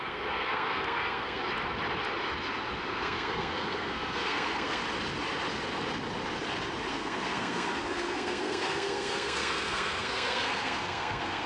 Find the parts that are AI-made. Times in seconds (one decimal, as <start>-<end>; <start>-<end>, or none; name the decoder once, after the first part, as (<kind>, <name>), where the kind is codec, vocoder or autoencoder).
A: 0.0-1.4 (codec, SNAC); 2.9-4.8; 6.9-11.5